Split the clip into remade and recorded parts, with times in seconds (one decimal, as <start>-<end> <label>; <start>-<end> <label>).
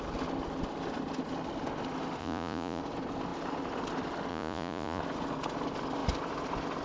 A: 0.0-2.2 recorded; 2.2-2.8 remade; 2.8-4.3 recorded; 4.3-5.0 remade; 5.0-6.8 recorded